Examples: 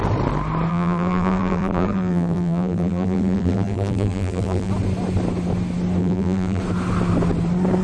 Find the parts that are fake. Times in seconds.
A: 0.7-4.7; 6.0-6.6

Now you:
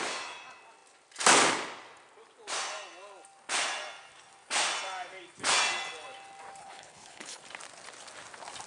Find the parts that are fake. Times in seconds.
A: 6.6-7.4

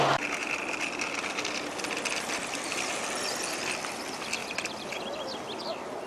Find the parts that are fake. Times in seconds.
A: 0.4-3.2; 4.4-5.0

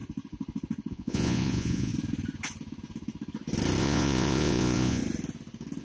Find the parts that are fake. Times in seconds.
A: 0.9-1.9; 3.8-5.0

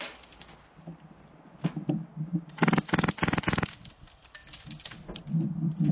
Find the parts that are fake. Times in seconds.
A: none

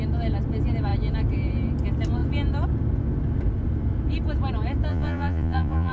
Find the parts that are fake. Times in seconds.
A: 4.9-5.9

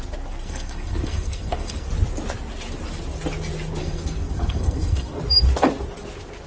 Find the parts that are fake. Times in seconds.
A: 0.4-1.9; 3.8-5.2

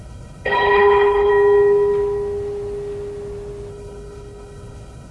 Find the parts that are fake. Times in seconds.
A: 0.0-1.3; 3.7-5.1